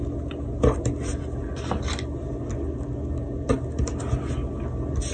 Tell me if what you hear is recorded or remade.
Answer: recorded